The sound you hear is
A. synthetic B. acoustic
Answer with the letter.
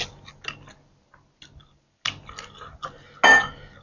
B